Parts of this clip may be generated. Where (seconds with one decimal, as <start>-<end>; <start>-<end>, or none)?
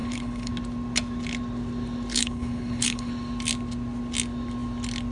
0.0-0.5; 2.1-3.1